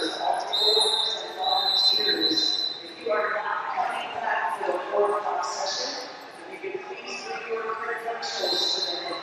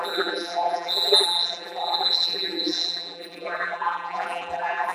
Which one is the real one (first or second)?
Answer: first